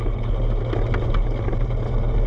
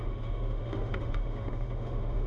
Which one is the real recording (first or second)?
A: first